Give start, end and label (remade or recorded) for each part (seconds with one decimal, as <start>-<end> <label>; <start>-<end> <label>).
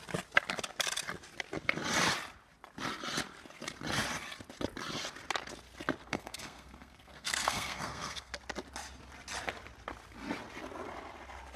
0.0-6.0 recorded; 6.0-8.3 remade; 8.3-11.6 recorded